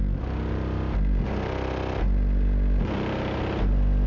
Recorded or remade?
recorded